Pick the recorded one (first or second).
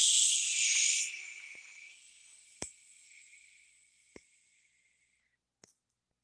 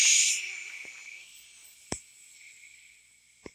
second